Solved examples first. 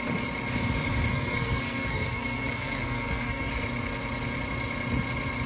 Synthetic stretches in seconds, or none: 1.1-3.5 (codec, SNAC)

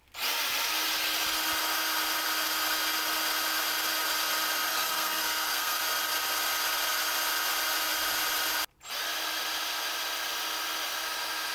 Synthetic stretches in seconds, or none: 4.7-5.8 (codec, SNAC)

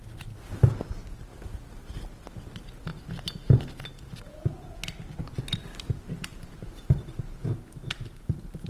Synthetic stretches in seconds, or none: none